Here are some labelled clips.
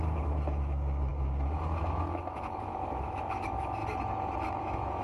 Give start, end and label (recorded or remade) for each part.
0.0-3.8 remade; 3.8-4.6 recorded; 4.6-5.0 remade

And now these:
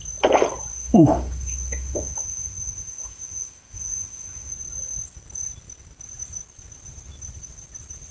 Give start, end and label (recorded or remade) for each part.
0.0-0.7 recorded; 0.7-4.5 remade; 4.5-8.1 recorded

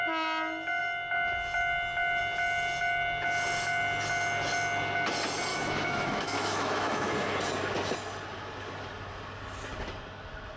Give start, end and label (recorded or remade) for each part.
0.0-5.5 recorded; 5.5-7.1 remade; 7.1-10.6 recorded

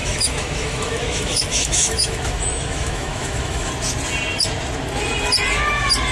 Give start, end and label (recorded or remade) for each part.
0.0-3.7 remade; 3.7-6.1 recorded

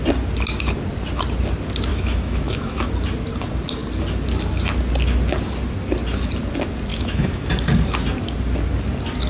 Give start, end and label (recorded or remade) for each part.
0.0-1.9 recorded; 1.9-2.9 remade; 2.9-6.9 recorded; 6.9-7.5 remade; 7.5-9.3 recorded

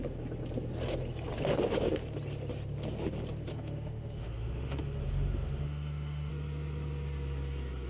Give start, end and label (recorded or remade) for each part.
0.0-3.5 recorded; 3.5-6.3 remade; 6.3-7.9 recorded

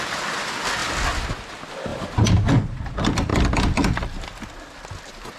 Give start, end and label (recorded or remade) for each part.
0.0-5.4 recorded

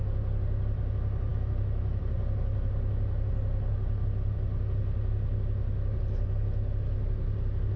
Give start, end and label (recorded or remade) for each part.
0.0-1.3 recorded; 1.3-2.0 remade; 2.0-7.8 recorded